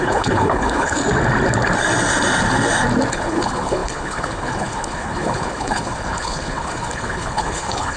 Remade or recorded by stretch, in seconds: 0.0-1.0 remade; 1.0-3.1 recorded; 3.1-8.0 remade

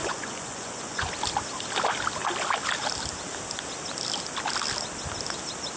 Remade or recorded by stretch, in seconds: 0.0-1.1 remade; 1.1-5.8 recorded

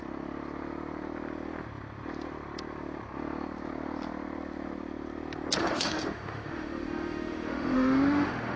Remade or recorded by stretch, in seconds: 0.0-5.6 recorded; 5.6-8.6 remade

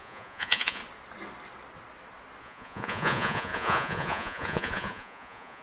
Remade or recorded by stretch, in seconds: 0.0-0.8 remade; 0.8-2.4 recorded; 2.4-5.6 remade